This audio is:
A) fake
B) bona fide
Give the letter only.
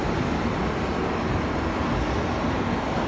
B